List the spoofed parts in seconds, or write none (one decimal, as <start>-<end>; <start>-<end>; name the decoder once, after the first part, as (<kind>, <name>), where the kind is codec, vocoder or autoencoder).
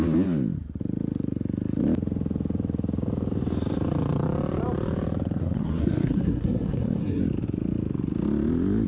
5.4-7.2 (codec, SNAC)